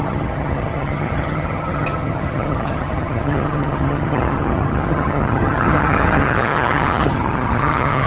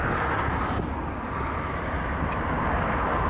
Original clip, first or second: second